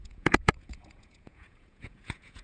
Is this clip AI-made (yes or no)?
yes